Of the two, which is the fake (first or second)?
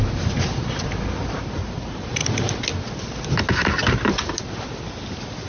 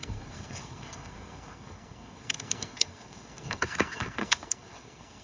second